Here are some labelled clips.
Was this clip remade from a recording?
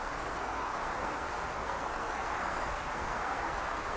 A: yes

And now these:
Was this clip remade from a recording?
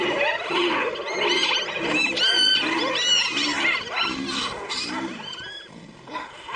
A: no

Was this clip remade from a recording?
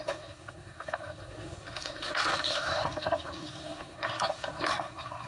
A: yes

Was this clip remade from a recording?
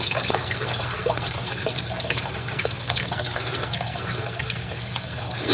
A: yes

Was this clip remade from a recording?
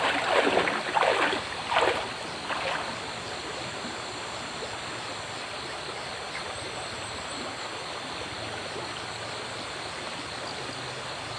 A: no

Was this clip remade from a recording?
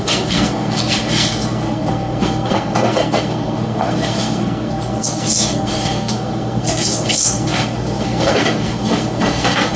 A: yes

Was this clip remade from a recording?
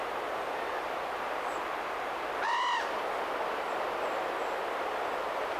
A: no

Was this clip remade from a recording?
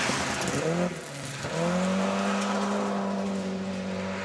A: no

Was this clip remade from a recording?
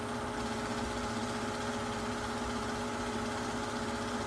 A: no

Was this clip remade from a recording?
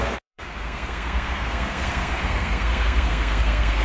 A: yes